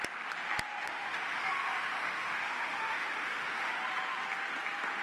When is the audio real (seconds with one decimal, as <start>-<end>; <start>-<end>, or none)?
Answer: 0.0-0.8; 3.8-5.0